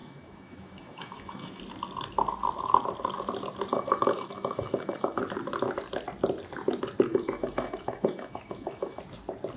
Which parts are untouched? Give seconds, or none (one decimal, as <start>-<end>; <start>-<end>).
1.6-3.7; 5.2-7.1; 9.0-9.6